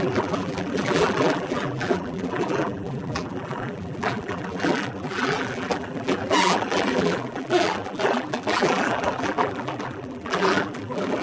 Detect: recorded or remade remade